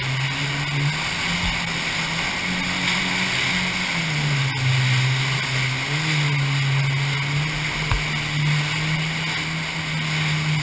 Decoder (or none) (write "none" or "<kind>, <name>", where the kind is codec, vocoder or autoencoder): none